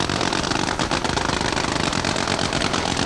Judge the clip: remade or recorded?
recorded